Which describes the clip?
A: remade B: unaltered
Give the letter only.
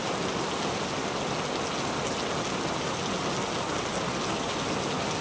B